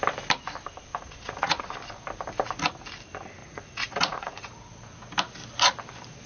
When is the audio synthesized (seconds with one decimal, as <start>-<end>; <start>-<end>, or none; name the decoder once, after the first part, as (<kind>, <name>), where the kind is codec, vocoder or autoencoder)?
0.9-1.6 (vocoder, Vocos); 3.4-4.5